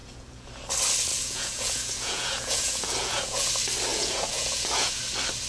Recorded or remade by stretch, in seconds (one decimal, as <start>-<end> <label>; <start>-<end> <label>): 0.0-0.5 remade; 0.5-1.1 recorded; 1.1-3.5 remade; 3.5-3.9 recorded; 3.9-5.0 remade; 5.0-5.5 recorded